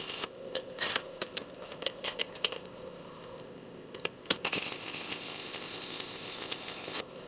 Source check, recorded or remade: remade